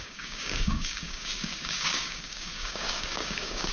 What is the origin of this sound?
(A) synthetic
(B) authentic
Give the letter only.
A